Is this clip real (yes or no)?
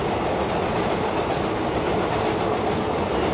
yes